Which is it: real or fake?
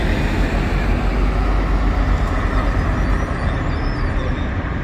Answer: real